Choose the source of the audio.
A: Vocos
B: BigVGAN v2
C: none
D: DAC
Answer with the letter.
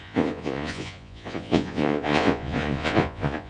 A